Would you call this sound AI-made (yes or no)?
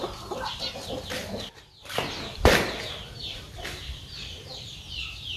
no